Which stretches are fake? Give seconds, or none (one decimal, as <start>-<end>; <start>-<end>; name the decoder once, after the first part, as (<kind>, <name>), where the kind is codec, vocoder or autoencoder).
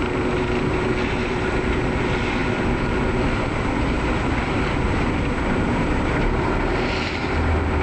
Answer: none